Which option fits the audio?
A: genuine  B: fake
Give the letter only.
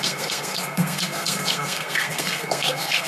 B